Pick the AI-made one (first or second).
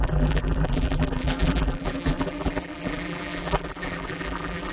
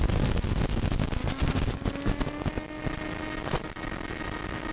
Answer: first